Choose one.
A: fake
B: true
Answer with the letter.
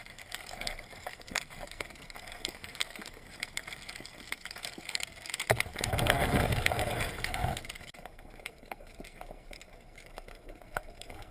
A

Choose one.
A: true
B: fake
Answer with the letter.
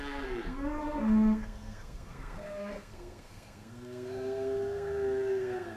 B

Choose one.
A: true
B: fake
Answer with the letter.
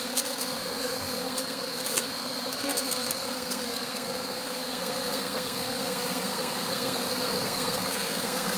B